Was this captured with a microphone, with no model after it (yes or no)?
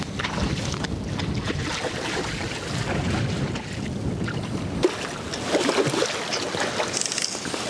yes